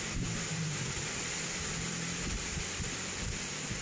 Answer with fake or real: fake